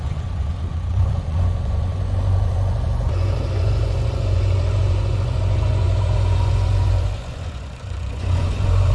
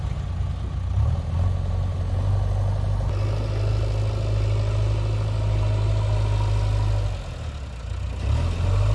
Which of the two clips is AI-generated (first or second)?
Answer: first